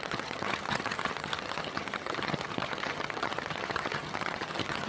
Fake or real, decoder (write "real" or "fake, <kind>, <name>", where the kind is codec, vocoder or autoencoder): fake, vocoder, HiFi-GAN